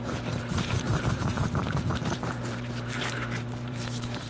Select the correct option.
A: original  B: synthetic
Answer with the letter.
B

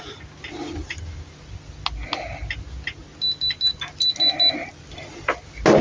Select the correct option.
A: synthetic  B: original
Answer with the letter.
B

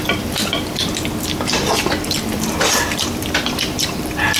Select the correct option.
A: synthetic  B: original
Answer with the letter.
A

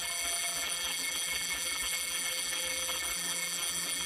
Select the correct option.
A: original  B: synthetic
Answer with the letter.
B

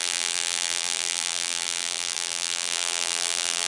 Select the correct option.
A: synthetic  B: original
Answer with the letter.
A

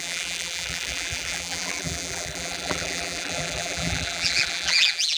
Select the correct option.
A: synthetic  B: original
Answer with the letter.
A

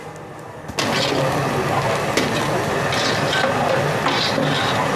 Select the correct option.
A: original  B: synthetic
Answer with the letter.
A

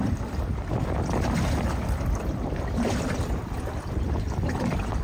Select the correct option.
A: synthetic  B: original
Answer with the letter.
A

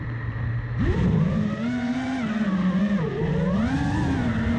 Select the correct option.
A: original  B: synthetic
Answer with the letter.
A